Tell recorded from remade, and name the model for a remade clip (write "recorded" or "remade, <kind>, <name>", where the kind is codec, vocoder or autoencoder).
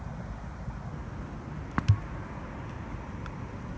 recorded